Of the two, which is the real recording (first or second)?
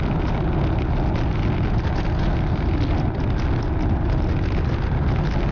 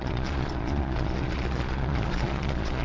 first